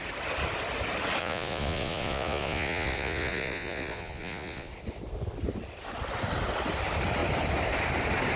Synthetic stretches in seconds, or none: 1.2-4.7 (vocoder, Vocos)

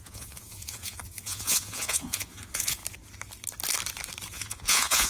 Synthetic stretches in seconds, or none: 0.0-2.8 (vocoder, Vocos); 4.3-5.1

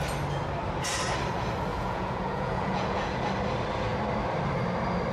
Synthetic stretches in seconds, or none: 1.7-3.3 (vocoder, Vocos)

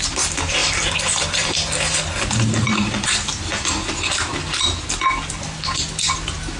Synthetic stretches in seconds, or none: none

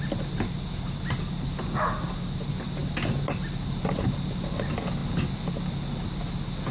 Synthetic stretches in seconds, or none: none

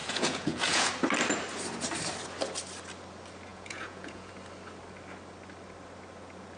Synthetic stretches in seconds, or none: 0.0-0.9 (vocoder, Vocos); 3.5-4.3

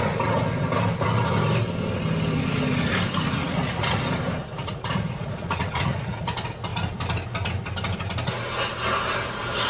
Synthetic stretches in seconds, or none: 3.4-4.0 (vocoder, Vocos); 4.6-6.2